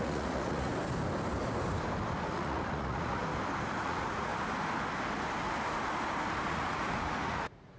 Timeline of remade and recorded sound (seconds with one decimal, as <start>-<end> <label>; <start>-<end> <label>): 0.0-0.7 remade; 0.7-2.2 recorded; 2.2-3.2 remade; 3.2-3.8 recorded; 3.8-4.3 remade; 4.3-6.5 recorded; 6.5-7.8 remade